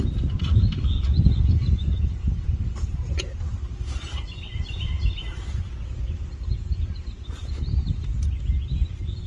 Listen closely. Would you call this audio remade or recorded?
recorded